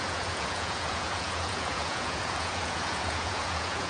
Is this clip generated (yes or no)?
yes